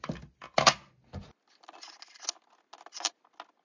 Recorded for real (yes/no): yes